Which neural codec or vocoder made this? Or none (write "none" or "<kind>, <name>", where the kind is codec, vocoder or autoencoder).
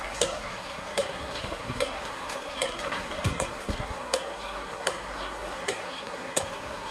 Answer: codec, SNAC